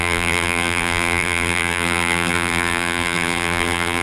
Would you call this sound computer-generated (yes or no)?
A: yes